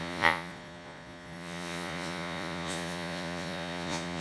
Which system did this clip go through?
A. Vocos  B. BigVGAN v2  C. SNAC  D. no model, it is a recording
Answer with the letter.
A